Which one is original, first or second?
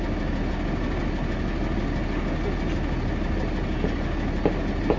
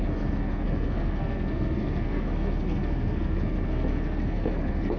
first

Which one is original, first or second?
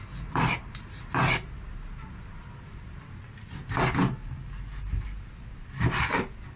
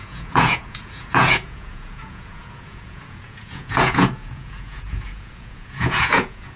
first